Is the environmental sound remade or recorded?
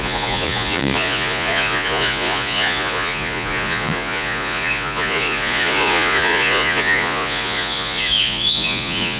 remade